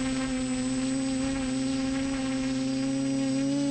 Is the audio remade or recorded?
recorded